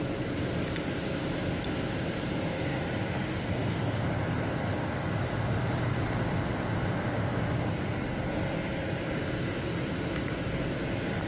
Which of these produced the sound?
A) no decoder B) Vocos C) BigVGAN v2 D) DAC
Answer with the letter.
A